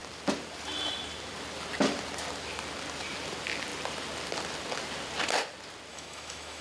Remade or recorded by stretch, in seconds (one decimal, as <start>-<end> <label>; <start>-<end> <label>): 0.0-5.9 recorded; 5.9-6.6 remade